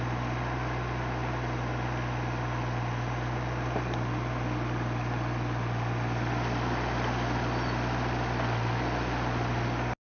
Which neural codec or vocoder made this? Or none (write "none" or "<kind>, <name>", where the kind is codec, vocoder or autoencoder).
none